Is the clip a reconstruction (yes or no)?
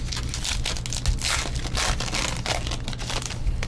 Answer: no